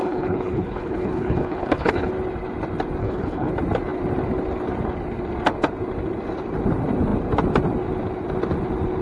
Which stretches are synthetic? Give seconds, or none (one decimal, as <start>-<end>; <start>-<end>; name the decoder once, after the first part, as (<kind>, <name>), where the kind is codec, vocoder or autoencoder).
0.0-2.1 (codec, HILCodec); 3.0-3.5